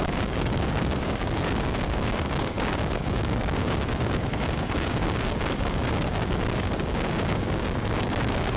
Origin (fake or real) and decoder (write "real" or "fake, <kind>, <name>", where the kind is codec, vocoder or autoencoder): fake, codec, DAC